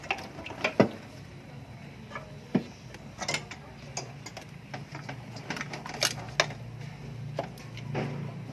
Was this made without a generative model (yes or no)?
yes